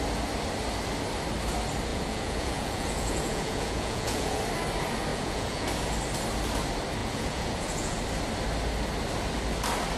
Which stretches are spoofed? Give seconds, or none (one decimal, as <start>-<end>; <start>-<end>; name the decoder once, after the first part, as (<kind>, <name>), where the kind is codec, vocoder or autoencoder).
1.9-4.4 (vocoder, Vocos); 5.1-5.7; 7.0-8.0